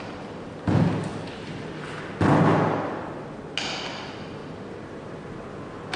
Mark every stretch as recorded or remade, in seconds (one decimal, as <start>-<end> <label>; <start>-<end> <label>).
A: 0.0-6.0 recorded